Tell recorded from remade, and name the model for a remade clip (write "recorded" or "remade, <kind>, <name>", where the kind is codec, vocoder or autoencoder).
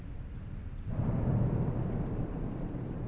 recorded